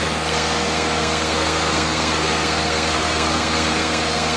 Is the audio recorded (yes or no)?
no